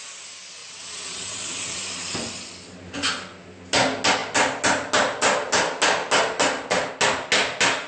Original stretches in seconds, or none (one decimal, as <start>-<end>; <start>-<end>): 0.0-0.6; 1.8-7.9

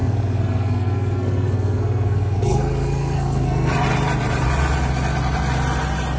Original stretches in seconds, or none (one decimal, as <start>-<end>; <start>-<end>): 3.7-6.2

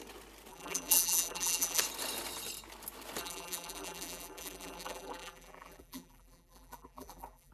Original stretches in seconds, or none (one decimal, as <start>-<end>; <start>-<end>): 0.0-0.5; 1.8-3.2

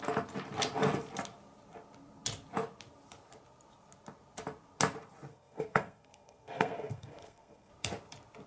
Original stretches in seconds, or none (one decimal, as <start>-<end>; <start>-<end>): 0.0-5.3; 7.7-8.5

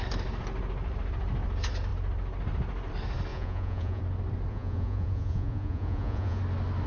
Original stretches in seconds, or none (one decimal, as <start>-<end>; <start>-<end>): 0.0-3.3; 4.0-4.5; 6.4-6.9

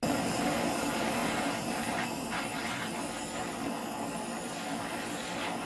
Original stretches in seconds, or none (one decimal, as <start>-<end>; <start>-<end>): 0.0-1.2; 2.9-5.7

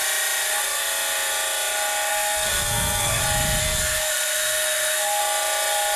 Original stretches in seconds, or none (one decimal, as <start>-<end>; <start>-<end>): 0.0-2.1; 3.2-3.6; 5.2-6.0

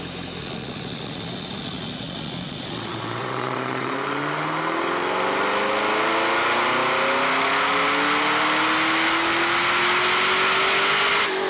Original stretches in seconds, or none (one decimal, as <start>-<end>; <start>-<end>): 0.0-0.4; 3.9-11.5